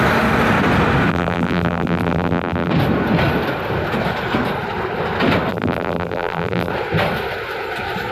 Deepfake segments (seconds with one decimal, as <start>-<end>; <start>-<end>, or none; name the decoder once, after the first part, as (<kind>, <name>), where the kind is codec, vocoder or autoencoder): 1.1-2.7 (vocoder, BigVGAN v2); 5.5-6.7